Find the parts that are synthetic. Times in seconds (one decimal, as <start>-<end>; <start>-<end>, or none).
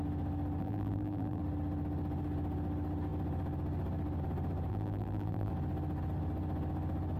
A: 0.6-1.4; 4.7-5.5